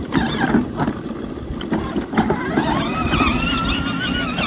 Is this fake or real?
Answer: real